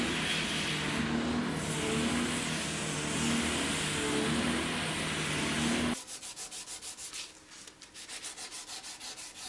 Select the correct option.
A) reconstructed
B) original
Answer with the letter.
B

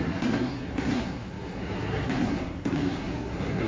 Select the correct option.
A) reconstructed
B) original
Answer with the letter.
A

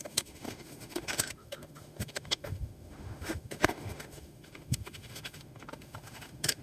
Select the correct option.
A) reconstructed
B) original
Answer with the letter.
A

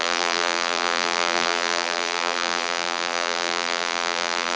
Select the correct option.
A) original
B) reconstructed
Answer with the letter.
B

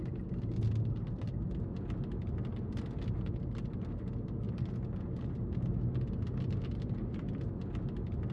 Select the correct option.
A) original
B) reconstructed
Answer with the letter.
A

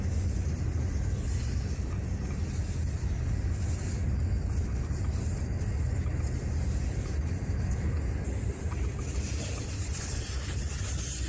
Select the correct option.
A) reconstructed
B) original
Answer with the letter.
B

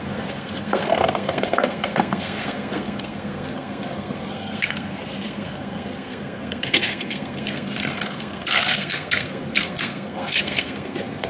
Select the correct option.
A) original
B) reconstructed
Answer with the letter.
B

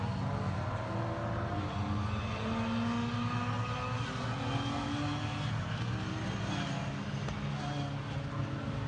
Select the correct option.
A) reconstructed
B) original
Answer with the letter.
B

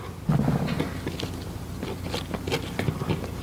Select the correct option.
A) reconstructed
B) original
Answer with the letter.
B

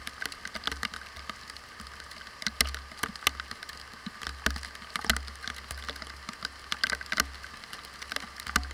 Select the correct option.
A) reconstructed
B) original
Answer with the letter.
B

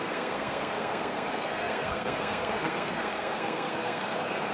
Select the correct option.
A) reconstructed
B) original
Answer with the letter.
A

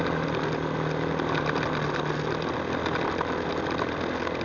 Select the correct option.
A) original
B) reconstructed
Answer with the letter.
A